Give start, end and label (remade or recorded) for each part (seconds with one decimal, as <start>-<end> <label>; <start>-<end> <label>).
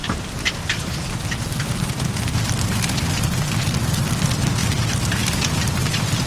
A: 0.0-3.5 remade; 3.5-4.6 recorded; 4.6-6.3 remade